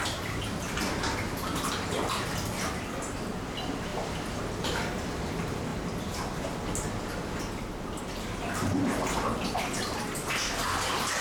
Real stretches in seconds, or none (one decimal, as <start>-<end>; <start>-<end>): 0.0-11.2